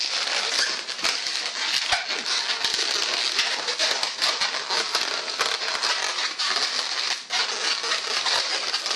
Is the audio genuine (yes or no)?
yes